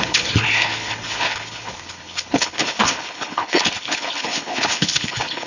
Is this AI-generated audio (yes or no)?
yes